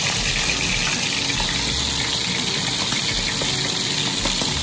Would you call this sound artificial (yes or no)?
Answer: no